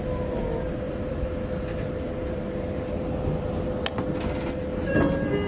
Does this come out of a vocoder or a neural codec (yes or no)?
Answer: no